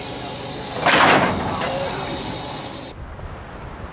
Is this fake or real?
real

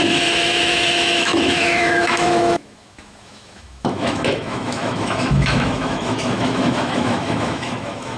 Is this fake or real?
fake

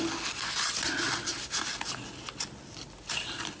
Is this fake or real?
real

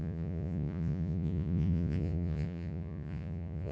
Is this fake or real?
fake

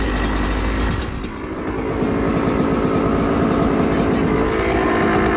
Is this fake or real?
real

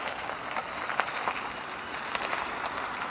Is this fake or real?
real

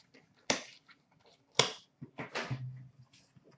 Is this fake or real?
real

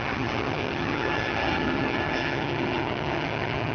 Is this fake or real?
fake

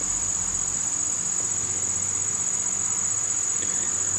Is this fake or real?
real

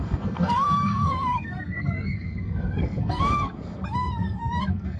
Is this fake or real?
fake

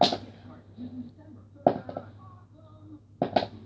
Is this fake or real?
real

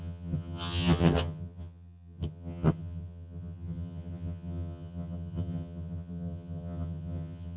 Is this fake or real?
fake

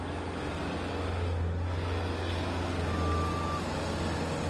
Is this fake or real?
real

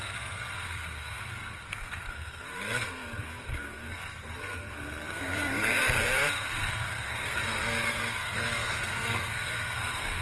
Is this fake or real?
fake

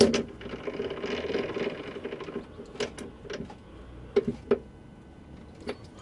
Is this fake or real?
real